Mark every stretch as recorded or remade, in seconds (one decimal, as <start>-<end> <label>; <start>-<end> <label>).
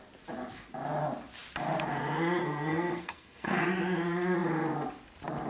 0.0-2.4 recorded; 2.4-3.6 remade; 3.6-5.5 recorded